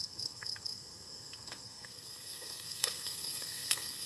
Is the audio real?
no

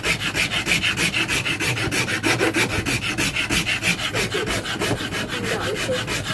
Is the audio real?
yes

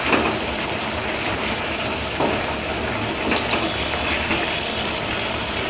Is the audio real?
yes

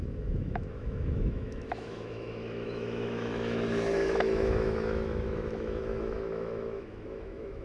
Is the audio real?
no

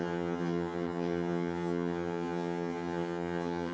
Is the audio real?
no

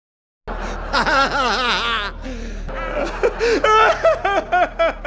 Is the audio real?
yes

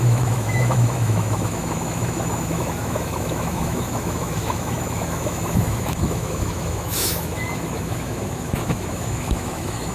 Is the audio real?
no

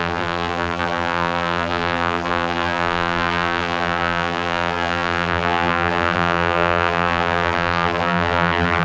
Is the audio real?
no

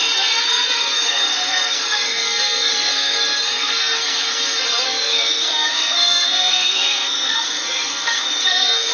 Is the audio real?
no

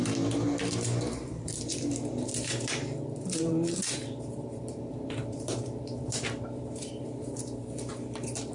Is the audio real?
no